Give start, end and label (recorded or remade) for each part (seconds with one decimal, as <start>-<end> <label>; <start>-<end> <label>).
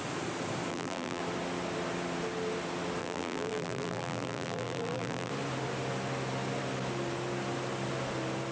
0.0-0.7 recorded; 0.7-1.2 remade; 1.2-3.0 recorded; 3.0-5.3 remade; 5.3-8.5 recorded